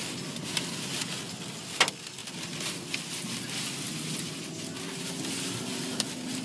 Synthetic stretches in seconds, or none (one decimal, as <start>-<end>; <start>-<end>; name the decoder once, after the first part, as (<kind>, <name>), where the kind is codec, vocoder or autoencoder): none